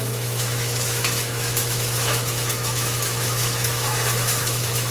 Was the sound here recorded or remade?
remade